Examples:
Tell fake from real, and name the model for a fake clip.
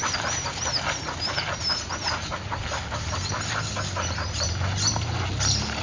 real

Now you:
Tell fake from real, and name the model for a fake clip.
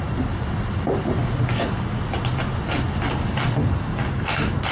real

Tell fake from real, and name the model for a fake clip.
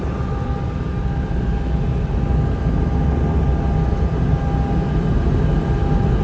real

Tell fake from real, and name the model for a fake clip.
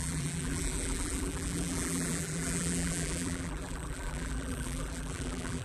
fake, vocoder, BigVGAN v2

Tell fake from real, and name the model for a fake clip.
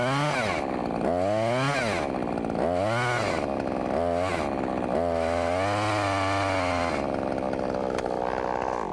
real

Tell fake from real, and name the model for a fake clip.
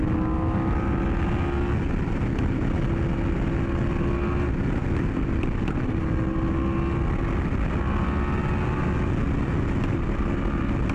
real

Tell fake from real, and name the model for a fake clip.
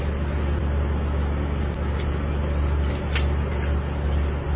real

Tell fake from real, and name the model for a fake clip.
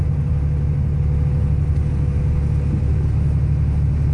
real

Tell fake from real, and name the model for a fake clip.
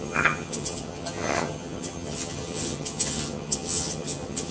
fake, vocoder, HiFi-GAN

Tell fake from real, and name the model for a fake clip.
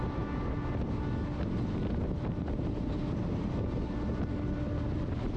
real